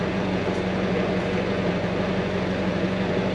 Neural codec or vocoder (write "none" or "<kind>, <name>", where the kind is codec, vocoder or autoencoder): vocoder, Vocos